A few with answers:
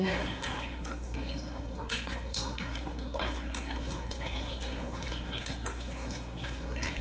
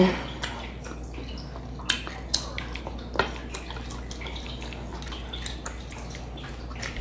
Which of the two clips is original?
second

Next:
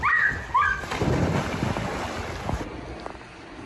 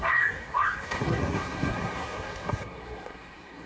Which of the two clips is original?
first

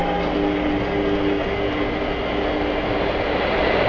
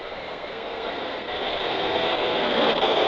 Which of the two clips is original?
first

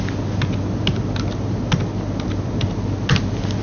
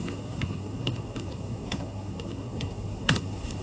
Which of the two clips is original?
first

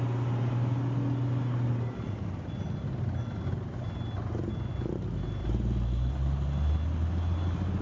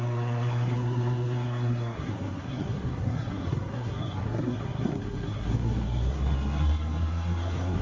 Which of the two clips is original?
first